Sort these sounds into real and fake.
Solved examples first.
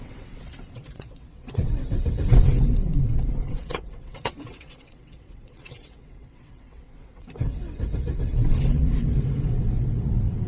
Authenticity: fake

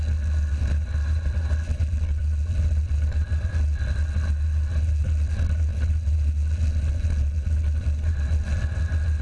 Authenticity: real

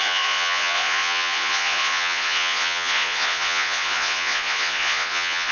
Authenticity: fake